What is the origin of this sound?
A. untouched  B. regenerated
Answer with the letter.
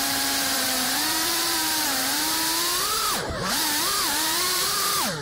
B